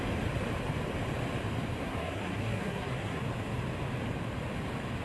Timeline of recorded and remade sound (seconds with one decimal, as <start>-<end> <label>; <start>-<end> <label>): 0.0-1.8 recorded; 1.8-3.2 remade; 3.2-5.0 recorded